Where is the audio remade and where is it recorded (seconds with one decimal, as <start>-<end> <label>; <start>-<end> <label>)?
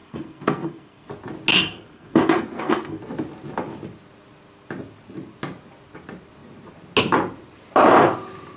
0.0-1.1 remade; 1.1-1.5 recorded; 1.5-3.0 remade; 3.0-8.6 recorded